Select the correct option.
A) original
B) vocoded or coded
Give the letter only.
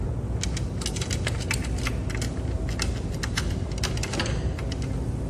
A